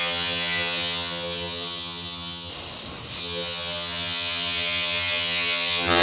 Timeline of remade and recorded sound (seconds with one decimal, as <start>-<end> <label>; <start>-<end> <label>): 0.0-2.5 remade; 2.5-3.2 recorded; 3.2-6.0 remade